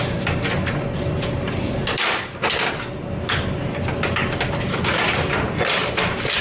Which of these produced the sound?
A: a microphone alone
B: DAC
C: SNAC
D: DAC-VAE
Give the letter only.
A